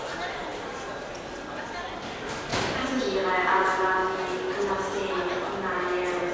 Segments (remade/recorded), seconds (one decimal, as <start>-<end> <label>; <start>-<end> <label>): 0.0-0.5 recorded; 0.5-1.4 remade; 1.4-2.5 recorded; 2.5-3.0 remade; 3.0-6.3 recorded